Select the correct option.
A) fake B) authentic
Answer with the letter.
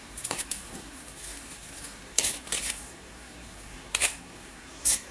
A